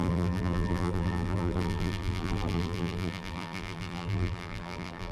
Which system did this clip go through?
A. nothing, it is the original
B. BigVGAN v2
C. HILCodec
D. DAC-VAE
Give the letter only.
B